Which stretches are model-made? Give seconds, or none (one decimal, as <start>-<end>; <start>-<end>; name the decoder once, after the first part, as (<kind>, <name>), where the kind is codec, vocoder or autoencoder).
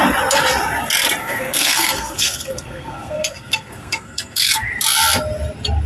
1.2-4.7 (codec, SNAC)